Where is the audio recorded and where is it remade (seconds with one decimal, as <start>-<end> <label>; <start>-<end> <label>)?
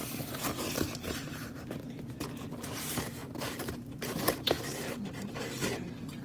0.0-6.2 recorded